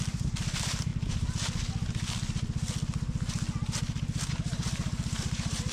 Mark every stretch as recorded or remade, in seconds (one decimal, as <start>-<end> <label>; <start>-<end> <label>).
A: 0.0-0.9 remade; 0.9-4.3 recorded; 4.3-5.7 remade